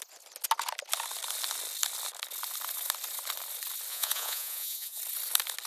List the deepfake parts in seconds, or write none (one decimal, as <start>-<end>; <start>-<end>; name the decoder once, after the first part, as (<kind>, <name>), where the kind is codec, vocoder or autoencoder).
3.9-5.0 (vocoder, Vocos)

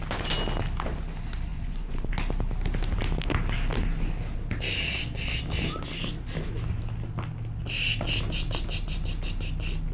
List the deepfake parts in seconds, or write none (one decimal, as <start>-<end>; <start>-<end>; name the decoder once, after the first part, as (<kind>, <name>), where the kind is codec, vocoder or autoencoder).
1.5-2.1 (vocoder, Vocos)

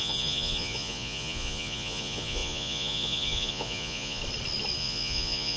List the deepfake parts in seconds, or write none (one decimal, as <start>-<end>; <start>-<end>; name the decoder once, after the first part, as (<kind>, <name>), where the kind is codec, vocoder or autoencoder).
0.0-4.2 (vocoder, Vocos); 4.8-5.6

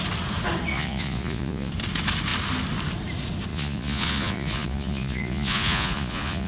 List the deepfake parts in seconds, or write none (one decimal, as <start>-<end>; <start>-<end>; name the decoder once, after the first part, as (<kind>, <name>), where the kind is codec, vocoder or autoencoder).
0.7-1.7 (vocoder, Vocos); 3.5-6.5

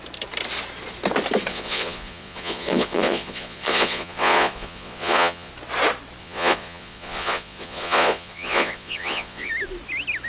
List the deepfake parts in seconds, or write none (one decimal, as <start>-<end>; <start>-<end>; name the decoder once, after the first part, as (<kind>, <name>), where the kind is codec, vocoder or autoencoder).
1.5-5.5 (vocoder, Vocos); 6.2-9.5

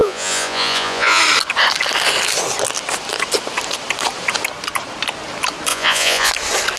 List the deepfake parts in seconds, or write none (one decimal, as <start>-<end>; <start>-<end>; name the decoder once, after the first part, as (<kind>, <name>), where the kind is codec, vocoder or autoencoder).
0.0-1.2 (vocoder, Vocos); 5.7-6.3

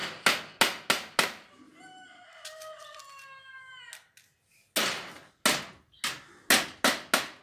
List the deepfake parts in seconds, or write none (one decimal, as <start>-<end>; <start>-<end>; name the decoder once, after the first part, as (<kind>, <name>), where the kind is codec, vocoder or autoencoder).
none